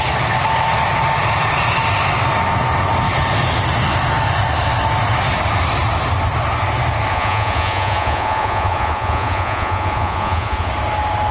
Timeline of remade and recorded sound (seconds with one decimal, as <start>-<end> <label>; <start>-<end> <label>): 0.0-7.1 recorded; 7.1-10.7 remade; 10.7-11.3 recorded